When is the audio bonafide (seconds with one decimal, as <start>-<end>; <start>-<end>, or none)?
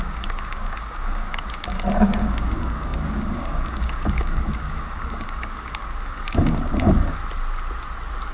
7.2-8.3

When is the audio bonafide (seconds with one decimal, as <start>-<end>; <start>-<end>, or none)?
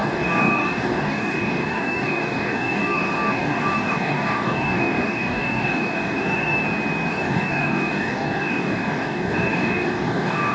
6.6-7.1